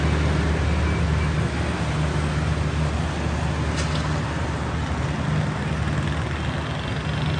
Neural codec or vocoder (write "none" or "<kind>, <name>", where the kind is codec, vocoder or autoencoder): none